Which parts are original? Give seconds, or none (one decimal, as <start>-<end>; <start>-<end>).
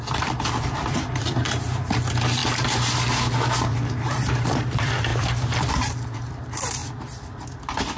2.4-3.5; 6.8-7.6